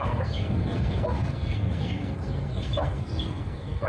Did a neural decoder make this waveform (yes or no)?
yes